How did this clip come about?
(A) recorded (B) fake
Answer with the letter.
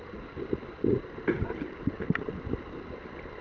A